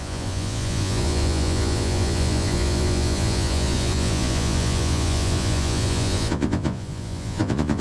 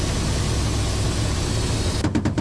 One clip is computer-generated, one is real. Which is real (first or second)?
second